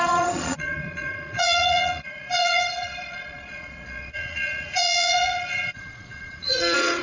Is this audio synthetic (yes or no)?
yes